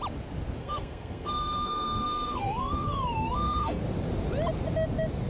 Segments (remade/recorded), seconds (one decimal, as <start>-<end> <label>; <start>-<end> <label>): 0.0-0.6 recorded; 0.6-3.8 remade; 3.8-5.3 recorded